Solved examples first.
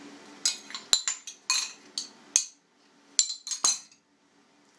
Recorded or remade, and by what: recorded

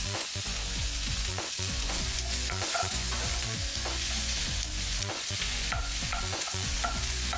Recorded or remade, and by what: remade, vocoder, Vocos